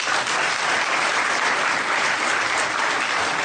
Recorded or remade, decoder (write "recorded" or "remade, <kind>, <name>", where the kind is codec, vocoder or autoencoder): recorded